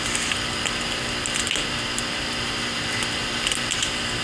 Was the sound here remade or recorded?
recorded